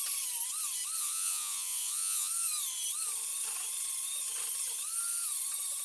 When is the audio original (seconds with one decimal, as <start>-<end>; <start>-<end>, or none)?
0.0-1.0; 2.3-5.8